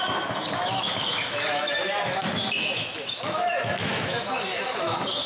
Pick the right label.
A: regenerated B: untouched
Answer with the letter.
A